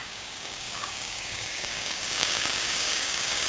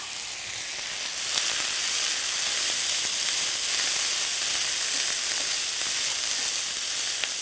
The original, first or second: second